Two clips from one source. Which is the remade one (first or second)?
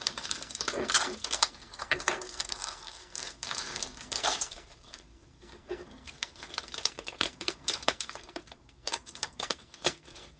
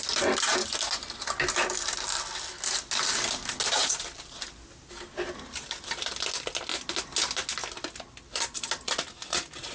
first